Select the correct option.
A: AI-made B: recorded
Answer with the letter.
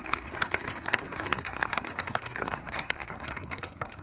A